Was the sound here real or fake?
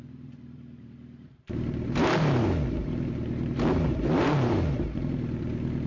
fake